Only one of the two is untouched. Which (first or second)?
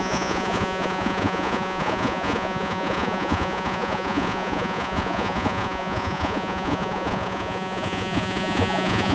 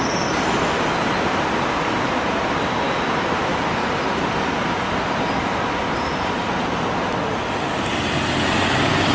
second